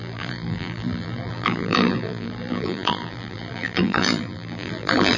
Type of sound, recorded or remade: remade